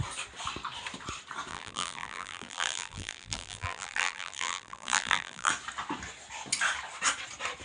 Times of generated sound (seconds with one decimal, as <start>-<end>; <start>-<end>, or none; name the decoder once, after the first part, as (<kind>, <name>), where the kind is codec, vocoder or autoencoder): 1.5-5.5 (vocoder, BigVGAN v2)